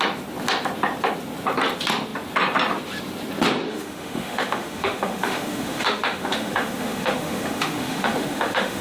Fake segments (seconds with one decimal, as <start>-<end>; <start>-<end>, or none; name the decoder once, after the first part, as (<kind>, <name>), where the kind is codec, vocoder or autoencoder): 3.7-8.8 (autoencoder, DAC-VAE)